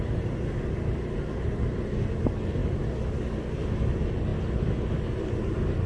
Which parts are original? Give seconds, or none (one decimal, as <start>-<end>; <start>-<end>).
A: 0.0-5.9